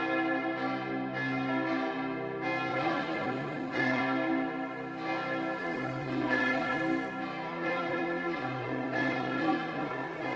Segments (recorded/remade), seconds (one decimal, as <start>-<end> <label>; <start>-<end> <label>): 0.0-2.7 recorded; 2.7-4.0 remade; 4.0-5.6 recorded; 5.6-6.8 remade; 6.8-7.5 recorded; 7.5-10.4 remade